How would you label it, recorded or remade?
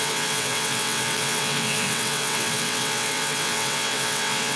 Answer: remade